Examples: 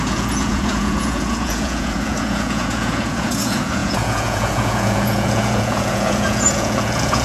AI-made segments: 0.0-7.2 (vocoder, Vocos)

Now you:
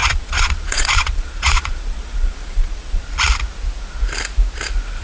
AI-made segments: 0.0-3.0 (vocoder, Vocos)

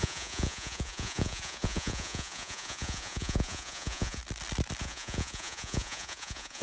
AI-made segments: 0.0-4.2 (vocoder, Vocos); 4.8-6.6